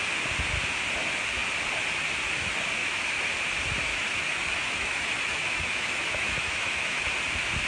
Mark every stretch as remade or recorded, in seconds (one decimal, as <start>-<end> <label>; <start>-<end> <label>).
0.0-2.8 recorded; 2.8-3.3 remade; 3.3-3.9 recorded; 3.9-7.1 remade; 7.1-7.7 recorded